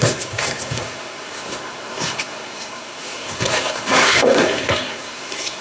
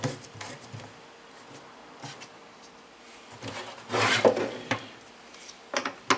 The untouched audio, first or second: second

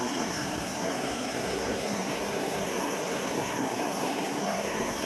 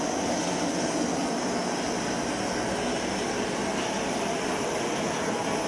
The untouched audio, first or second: second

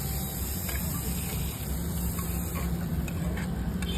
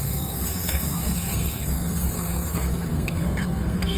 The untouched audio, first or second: first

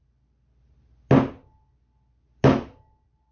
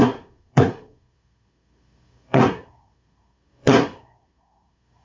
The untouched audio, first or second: first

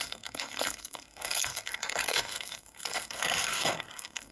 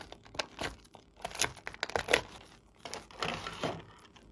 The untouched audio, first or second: second